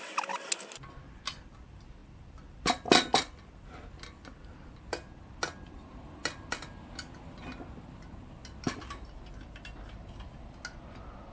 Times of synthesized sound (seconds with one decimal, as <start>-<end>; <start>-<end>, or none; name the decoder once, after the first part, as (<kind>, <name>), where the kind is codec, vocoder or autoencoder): none